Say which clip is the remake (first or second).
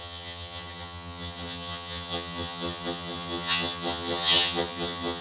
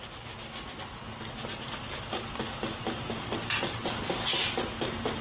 first